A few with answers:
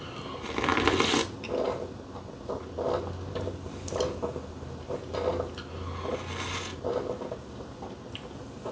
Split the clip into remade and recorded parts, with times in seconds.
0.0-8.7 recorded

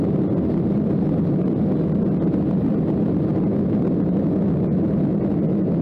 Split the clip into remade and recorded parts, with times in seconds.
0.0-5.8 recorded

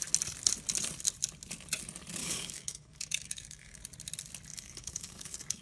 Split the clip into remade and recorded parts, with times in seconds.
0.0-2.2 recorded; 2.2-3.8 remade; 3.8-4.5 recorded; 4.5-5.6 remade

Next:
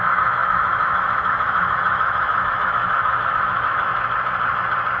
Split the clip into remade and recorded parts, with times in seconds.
0.0-3.9 remade; 3.9-5.0 recorded

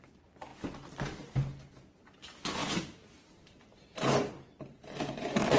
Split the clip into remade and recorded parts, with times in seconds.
0.0-2.6 recorded; 2.6-5.6 remade

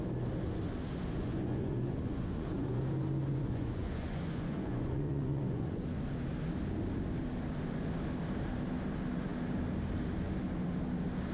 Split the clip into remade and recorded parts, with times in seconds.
0.0-1.2 recorded; 1.2-2.8 remade; 2.8-3.3 recorded; 3.3-6.0 remade; 6.0-11.3 recorded

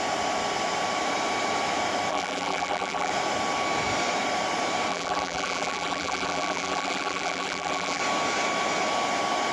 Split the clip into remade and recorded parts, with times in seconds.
0.0-2.1 recorded; 2.1-3.1 remade; 3.1-4.9 recorded; 4.9-8.0 remade; 8.0-9.5 recorded